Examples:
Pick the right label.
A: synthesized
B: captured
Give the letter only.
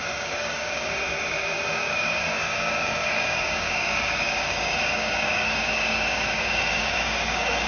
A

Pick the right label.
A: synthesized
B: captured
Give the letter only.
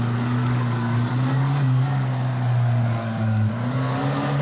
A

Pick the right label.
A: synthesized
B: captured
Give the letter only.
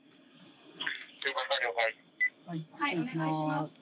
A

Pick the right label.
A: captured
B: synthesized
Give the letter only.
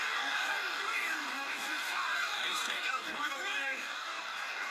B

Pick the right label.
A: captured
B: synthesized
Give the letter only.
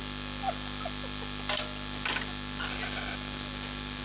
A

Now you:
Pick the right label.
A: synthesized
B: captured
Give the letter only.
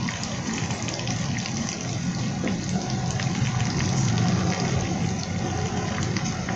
B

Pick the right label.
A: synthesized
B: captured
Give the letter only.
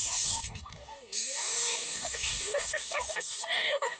A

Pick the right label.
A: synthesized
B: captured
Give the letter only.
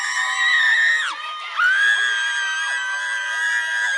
B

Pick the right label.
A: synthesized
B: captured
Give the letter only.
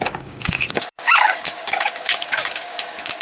A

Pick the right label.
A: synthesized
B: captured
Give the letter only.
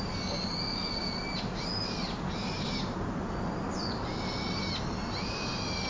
B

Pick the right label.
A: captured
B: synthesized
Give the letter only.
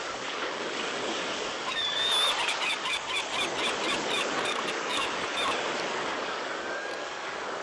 B